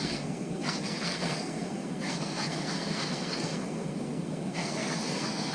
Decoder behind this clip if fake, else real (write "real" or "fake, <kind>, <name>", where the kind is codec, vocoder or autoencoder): fake, codec, SNAC